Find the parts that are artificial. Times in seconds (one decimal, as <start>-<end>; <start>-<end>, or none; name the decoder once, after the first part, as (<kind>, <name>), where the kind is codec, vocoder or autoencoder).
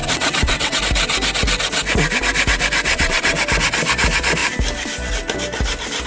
0.0-0.8 (vocoder, WaveNeXt); 2.9-3.4